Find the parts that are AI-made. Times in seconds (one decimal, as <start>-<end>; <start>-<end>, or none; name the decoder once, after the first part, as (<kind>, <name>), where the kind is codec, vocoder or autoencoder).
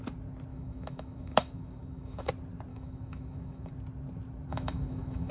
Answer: 0.5-2.3 (autoencoder, DAC-VAE); 2.7-3.7; 4.5-5.3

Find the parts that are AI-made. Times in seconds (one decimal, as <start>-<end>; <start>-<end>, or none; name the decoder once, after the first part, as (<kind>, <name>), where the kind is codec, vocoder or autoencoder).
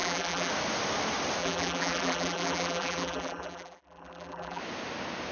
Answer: 0.0-0.5 (vocoder, BigVGAN v2); 1.4-4.6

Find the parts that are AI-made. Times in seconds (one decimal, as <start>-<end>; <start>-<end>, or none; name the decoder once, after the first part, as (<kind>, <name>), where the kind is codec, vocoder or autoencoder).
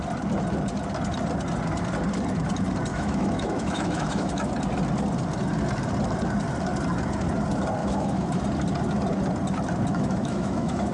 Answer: 2.9-4.5 (autoencoder, DAC-VAE); 7.8-8.4; 9.9-10.9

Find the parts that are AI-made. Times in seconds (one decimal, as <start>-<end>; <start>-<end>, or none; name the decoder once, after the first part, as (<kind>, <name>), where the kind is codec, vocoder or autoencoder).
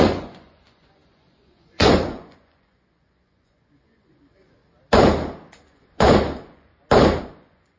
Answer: 0.0-4.6 (vocoder, Vocos); 5.5-6.7; 7.2-7.8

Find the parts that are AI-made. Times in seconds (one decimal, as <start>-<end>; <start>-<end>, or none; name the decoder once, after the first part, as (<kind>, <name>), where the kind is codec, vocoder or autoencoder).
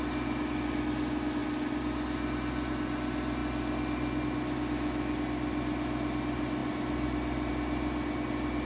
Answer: none